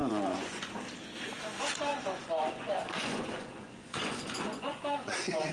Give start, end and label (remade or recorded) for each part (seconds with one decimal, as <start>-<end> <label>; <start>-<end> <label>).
0.0-0.7 remade; 0.7-1.9 recorded; 1.9-5.5 remade